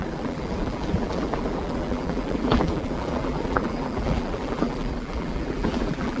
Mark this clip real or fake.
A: fake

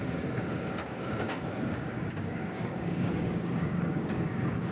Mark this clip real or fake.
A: fake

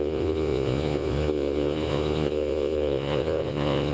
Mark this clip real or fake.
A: fake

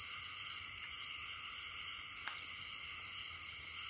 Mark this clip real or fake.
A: real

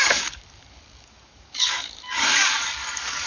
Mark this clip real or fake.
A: fake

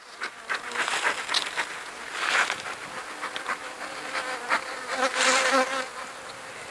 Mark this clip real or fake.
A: real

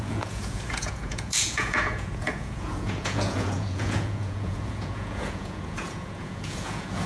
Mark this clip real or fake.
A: fake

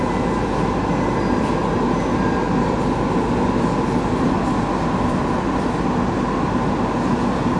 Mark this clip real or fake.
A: real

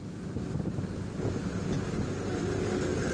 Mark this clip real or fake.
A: real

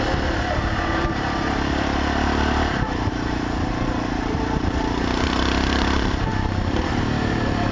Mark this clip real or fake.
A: fake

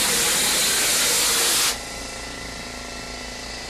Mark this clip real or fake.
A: real